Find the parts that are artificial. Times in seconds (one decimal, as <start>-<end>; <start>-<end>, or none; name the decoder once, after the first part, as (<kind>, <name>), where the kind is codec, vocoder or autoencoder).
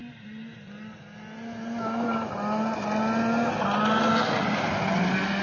none